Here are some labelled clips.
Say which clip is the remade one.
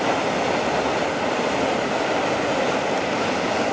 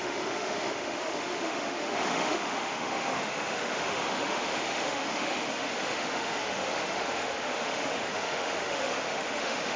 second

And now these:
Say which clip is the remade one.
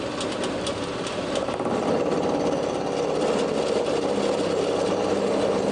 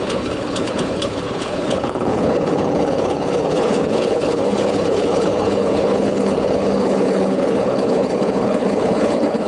second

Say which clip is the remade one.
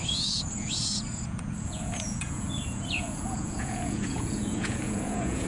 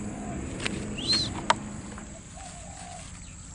first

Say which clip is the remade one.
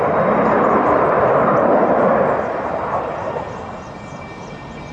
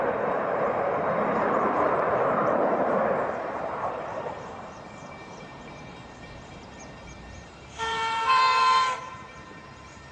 second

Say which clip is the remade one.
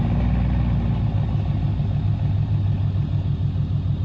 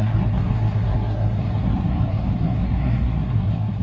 second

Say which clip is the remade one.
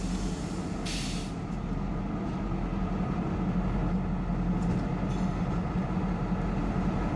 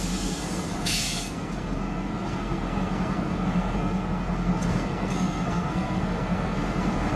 second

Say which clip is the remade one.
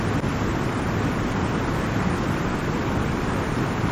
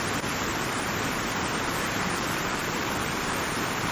second